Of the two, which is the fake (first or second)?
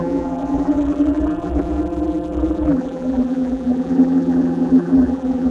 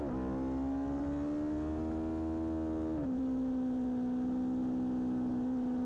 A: first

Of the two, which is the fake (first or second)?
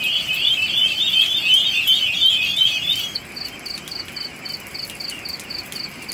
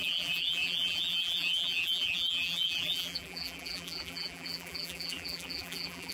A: second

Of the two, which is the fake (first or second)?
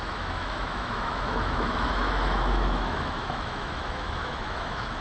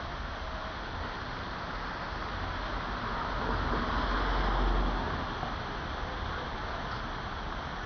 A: first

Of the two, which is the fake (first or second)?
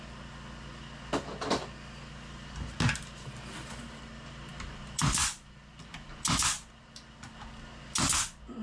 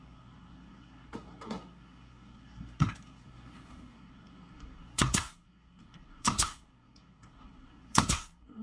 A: second